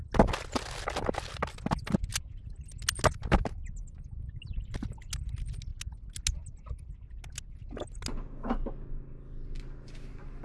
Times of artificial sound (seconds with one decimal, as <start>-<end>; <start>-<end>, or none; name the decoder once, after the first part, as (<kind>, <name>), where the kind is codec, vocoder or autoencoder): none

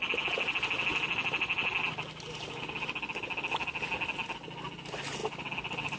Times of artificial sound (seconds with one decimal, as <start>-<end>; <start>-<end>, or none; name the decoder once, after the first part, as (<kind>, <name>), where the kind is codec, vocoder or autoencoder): none

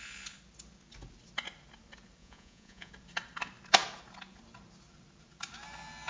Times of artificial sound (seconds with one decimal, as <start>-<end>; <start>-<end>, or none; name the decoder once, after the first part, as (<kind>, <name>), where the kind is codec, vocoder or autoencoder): 2.2-2.9 (vocoder, Vocos)